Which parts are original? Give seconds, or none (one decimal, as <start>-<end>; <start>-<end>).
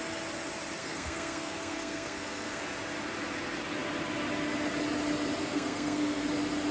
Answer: 0.0-0.8; 2.6-5.4; 6.2-6.7